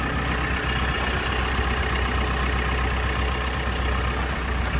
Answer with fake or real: real